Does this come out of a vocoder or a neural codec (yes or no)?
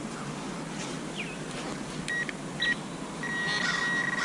no